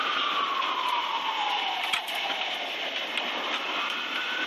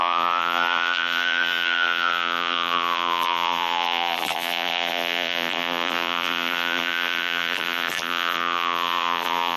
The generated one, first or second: second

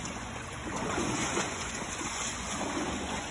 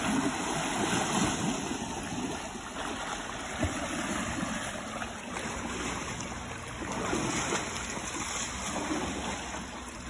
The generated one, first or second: first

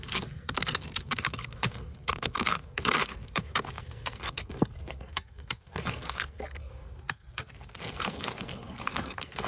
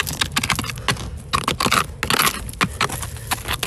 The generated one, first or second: first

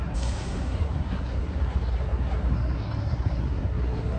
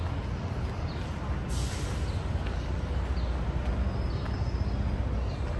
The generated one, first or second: first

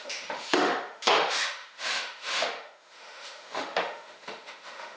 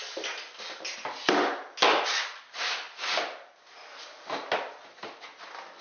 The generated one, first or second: first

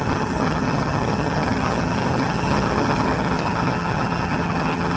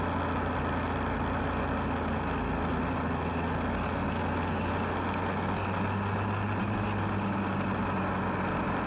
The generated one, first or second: first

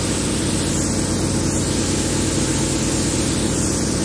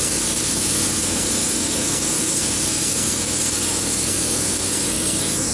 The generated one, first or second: second